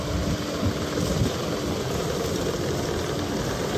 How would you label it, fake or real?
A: real